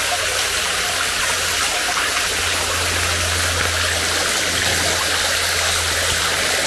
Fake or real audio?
real